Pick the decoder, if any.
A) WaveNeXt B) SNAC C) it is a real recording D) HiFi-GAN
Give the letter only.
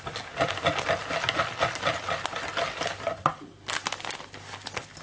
C